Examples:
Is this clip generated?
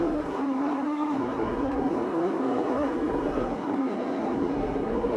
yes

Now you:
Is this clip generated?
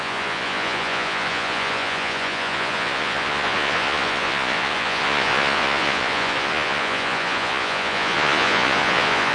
yes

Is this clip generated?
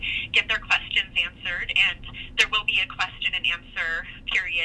no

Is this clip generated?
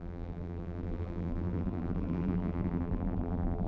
yes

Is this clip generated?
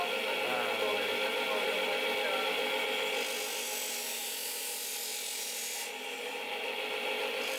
no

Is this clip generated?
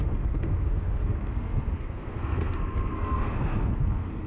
yes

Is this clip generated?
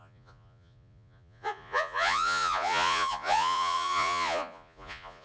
yes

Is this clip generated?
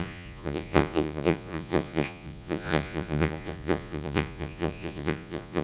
yes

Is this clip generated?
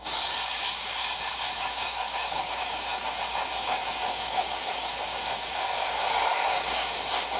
yes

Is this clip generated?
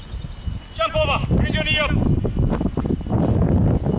no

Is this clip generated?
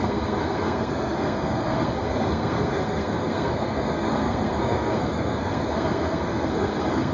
yes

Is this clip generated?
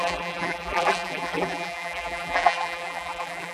yes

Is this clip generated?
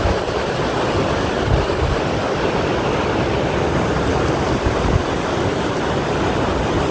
no